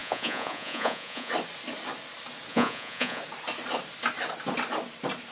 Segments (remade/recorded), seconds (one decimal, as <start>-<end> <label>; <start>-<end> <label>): 0.0-1.3 remade; 1.3-2.5 recorded; 2.5-3.2 remade; 3.2-5.3 recorded